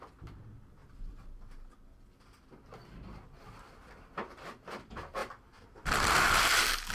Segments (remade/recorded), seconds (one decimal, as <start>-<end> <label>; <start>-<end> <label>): 0.0-0.8 recorded; 0.8-1.4 remade; 1.4-5.2 recorded; 5.2-6.0 remade; 6.0-6.9 recorded